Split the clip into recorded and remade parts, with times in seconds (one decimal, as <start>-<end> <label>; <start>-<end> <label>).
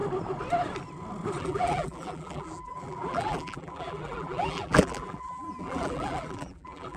0.0-1.4 recorded; 1.4-7.0 remade